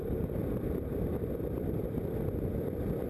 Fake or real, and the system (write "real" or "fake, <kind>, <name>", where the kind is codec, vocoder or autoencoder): fake, vocoder, BigVGAN v2